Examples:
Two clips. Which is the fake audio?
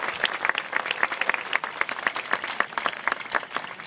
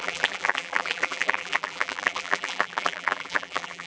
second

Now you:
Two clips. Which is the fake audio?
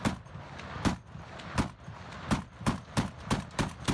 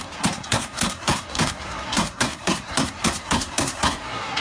second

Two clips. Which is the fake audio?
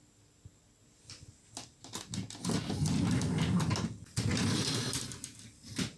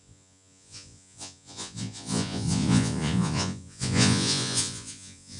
second